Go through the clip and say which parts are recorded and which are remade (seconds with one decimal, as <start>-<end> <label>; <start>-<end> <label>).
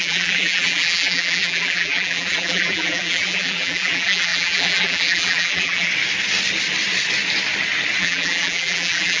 0.0-5.9 remade; 5.9-8.0 recorded; 8.0-9.2 remade